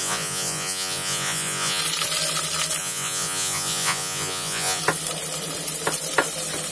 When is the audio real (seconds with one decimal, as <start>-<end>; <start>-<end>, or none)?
1.8-2.8; 4.8-6.7